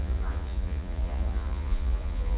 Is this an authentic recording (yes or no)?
no